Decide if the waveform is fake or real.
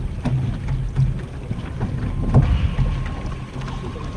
real